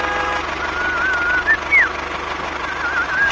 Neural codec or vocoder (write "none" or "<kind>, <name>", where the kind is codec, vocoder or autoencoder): none